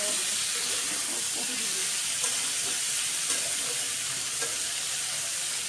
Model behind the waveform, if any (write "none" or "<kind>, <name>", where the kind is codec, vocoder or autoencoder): none